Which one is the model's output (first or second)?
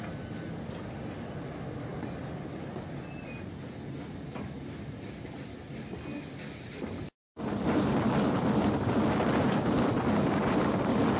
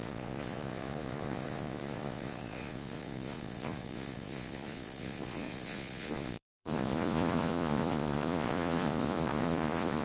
second